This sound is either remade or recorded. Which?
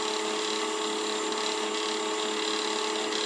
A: recorded